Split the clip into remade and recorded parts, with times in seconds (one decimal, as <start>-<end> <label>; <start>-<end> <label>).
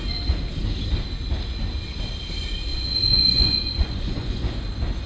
0.0-2.7 recorded; 2.7-4.5 remade; 4.5-5.1 recorded